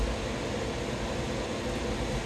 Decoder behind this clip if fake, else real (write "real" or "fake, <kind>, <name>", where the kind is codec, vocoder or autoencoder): real